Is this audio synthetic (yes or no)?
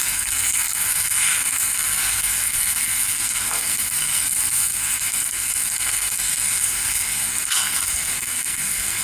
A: yes